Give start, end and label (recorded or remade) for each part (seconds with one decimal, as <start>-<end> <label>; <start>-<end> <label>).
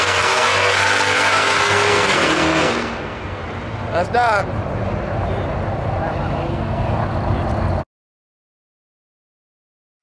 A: 0.0-3.4 remade; 3.4-6.5 recorded; 6.5-7.0 remade; 7.0-10.0 recorded